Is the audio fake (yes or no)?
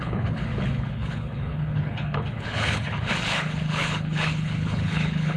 yes